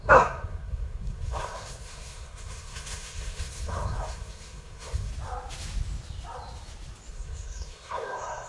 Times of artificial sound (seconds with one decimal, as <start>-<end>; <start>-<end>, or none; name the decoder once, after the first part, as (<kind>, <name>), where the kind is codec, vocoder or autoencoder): 0.0-5.1 (codec, SNAC); 7.1-8.5

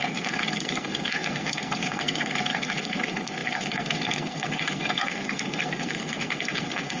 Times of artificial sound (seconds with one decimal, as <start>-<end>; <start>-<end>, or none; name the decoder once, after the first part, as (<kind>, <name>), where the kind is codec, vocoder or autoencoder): 0.0-7.0 (codec, SNAC)

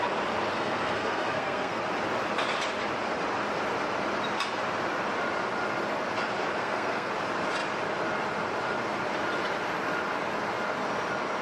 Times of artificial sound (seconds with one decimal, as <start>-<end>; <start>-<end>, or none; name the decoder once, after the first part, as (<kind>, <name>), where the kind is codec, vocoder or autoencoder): 0.5-1.8 (codec, SNAC); 6.6-7.1

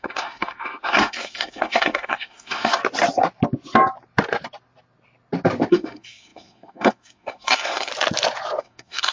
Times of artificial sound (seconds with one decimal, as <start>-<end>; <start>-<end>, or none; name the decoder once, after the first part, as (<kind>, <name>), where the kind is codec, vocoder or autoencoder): 0.0-2.8 (codec, SNAC); 5.7-7.9; 8.6-9.1

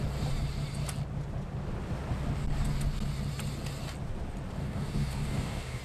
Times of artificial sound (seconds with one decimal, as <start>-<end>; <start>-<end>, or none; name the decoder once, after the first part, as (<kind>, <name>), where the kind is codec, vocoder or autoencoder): 4.6-5.8 (codec, DAC)

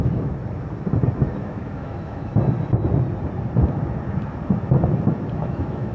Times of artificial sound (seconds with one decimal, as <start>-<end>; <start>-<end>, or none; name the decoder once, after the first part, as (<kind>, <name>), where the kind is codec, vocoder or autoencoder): 0.0-0.4 (autoencoder, DAC-VAE); 1.4-2.3; 5.3-5.9